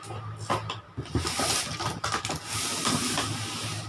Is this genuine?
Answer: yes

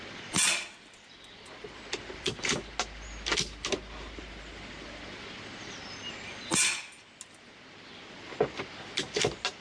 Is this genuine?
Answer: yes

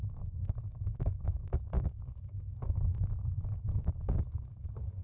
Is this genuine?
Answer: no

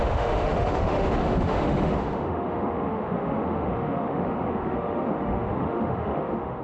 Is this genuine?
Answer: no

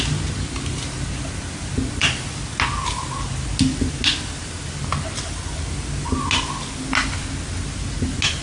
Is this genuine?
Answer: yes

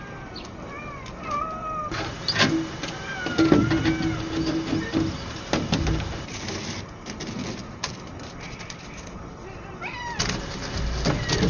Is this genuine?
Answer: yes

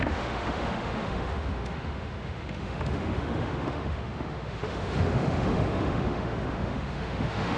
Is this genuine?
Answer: no